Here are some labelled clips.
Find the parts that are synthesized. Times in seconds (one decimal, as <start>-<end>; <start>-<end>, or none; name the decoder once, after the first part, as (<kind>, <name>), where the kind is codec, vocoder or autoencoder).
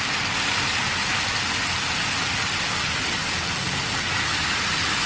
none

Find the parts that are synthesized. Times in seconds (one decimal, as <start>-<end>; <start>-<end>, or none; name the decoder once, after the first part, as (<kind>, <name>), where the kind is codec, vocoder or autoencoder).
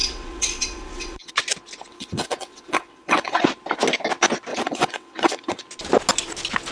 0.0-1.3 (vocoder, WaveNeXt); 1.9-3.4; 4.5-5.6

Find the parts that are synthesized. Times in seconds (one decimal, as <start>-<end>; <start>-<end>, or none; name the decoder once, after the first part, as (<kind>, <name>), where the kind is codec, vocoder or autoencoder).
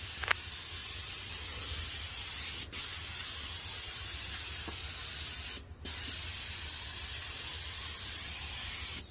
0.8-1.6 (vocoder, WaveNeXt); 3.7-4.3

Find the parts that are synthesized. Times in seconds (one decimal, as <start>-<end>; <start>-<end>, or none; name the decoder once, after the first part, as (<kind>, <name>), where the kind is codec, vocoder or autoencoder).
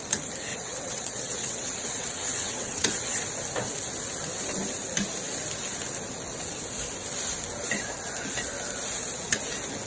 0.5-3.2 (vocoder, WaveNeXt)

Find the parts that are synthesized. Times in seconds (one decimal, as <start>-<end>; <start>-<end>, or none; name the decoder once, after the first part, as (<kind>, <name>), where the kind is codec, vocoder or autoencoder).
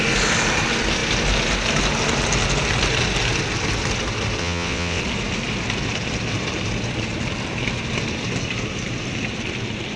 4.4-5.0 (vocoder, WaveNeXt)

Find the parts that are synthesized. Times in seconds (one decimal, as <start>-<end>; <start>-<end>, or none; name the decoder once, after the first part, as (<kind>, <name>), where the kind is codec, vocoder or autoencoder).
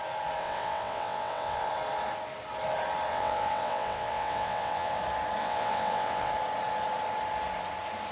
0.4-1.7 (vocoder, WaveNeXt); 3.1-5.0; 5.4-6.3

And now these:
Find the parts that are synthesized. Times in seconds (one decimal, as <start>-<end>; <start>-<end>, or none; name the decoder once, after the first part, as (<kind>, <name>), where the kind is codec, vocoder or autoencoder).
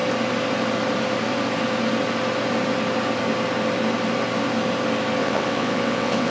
5.2-6.3 (vocoder, WaveNeXt)